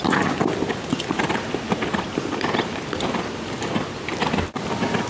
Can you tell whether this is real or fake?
real